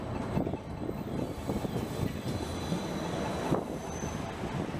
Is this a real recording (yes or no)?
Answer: yes